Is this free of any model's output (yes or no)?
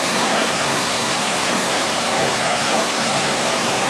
no